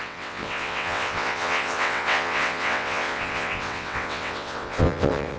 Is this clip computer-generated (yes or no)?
yes